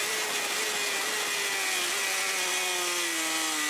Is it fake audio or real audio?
real